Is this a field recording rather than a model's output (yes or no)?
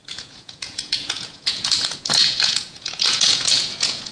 no